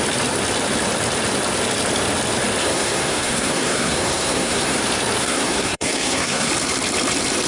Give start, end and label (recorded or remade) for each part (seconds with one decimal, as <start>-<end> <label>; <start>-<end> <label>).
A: 0.0-2.6 recorded; 2.6-4.8 remade; 4.8-5.2 recorded; 5.2-6.5 remade; 6.5-7.5 recorded